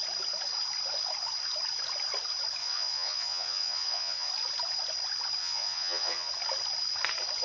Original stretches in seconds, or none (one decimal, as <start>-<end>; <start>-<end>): 0.0-2.6; 4.3-5.4; 6.3-7.4